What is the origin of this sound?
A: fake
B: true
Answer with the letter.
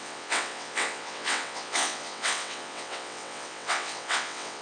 A